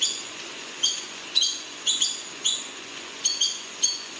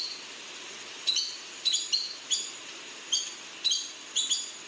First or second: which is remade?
first